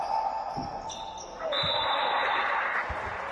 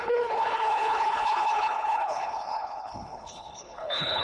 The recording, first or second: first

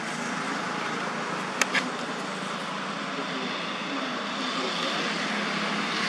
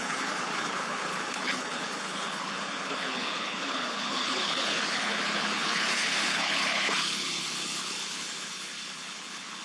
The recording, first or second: first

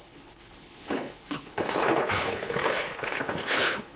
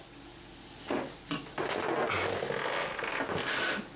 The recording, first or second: second